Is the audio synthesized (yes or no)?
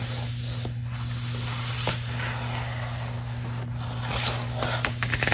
no